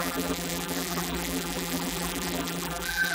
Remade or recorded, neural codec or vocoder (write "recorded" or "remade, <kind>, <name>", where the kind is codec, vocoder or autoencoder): remade, vocoder, BigVGAN v2